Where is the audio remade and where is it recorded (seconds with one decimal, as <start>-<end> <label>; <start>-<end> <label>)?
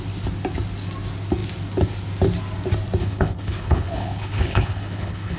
0.0-3.0 recorded; 3.0-5.4 remade